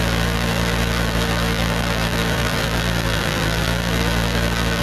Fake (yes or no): yes